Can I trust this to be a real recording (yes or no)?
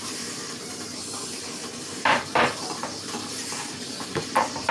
no